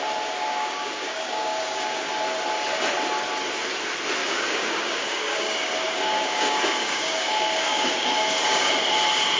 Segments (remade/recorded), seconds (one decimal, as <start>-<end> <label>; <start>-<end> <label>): 0.0-0.5 recorded; 0.5-2.1 remade; 2.1-4.2 recorded; 4.2-8.7 remade; 8.7-9.4 recorded